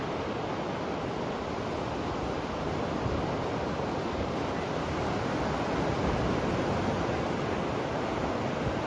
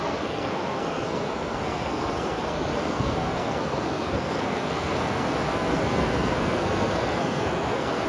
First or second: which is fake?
second